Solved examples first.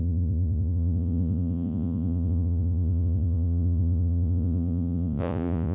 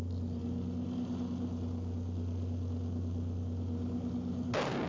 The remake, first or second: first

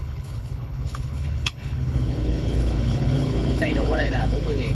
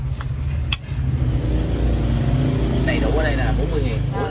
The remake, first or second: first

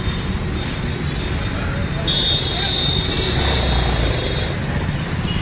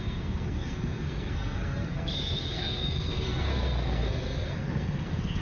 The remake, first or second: second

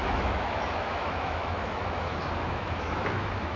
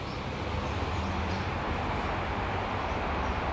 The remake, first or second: first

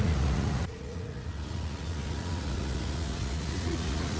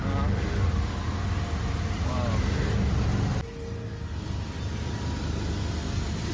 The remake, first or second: first